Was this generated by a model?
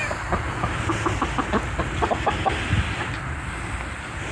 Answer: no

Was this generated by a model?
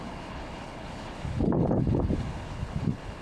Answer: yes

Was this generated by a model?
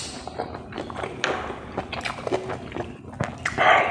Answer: no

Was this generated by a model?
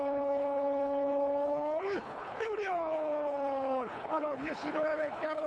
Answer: yes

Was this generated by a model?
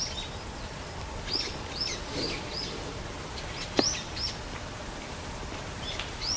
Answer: no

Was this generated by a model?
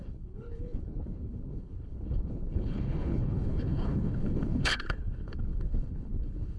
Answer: yes